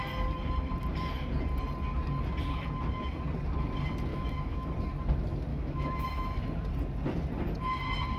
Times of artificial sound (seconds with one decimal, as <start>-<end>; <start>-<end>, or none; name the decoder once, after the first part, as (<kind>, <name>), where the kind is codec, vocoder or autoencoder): 4.1-4.7 (autoencoder, DAC-VAE); 5.5-6.4